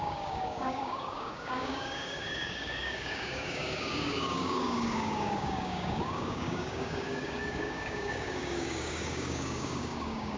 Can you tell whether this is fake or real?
fake